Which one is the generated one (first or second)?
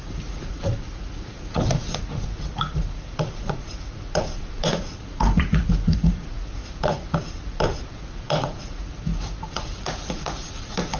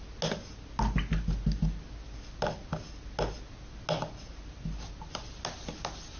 first